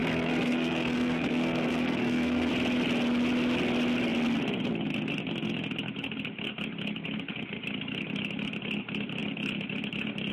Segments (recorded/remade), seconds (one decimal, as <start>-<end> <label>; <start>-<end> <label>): 0.0-2.5 remade; 2.5-10.3 recorded